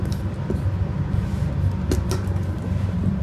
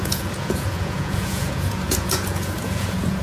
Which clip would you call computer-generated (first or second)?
second